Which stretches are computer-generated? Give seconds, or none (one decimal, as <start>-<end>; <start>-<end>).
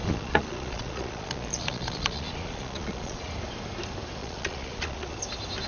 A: 0.0-3.3; 4.2-5.2